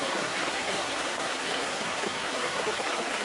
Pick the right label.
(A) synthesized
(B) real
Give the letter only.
A